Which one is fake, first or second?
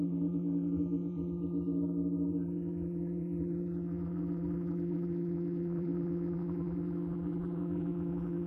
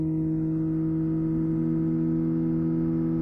first